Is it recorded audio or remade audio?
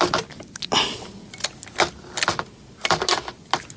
recorded